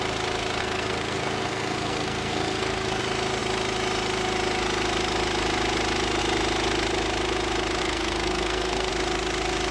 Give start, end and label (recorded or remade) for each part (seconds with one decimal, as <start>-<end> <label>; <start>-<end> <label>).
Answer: 0.0-0.6 recorded; 0.6-3.0 remade; 3.0-7.8 recorded; 7.8-8.9 remade; 8.9-9.7 recorded